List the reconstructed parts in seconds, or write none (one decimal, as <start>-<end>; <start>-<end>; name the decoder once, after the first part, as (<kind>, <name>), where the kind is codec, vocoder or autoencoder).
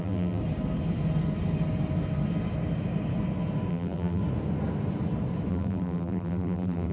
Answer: 0.0-0.4 (vocoder, BigVGAN v2); 3.7-4.2; 5.5-6.9